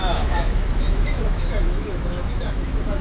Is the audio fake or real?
fake